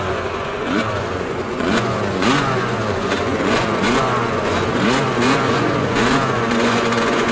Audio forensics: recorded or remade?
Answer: remade